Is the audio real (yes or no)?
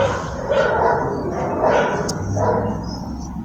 yes